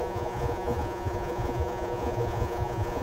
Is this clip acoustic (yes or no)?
no